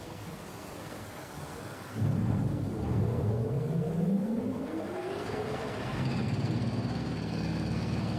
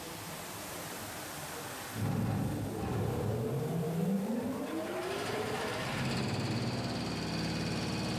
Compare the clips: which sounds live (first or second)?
second